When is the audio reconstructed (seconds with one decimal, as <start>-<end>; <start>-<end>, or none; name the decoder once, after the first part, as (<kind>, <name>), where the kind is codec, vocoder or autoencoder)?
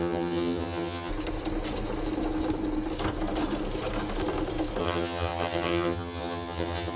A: 0.0-1.1 (vocoder, HiFi-GAN); 4.8-7.0